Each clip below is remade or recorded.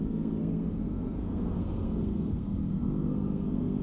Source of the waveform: remade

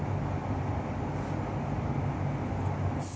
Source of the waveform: recorded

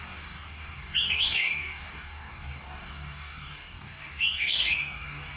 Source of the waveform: remade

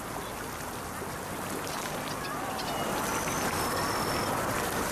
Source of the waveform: recorded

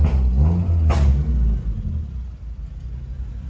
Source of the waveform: recorded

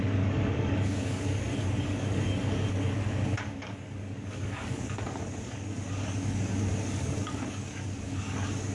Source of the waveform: remade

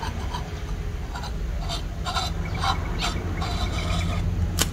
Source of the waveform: recorded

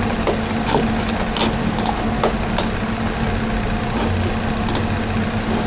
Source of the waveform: recorded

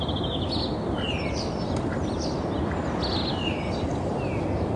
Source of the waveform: recorded